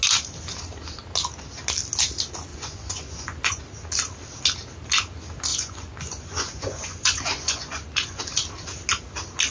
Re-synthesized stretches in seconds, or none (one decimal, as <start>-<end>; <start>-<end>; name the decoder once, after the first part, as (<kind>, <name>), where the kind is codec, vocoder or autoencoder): 2.5-3.6 (vocoder, Vocos); 5.5-8.2